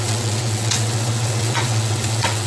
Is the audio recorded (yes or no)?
no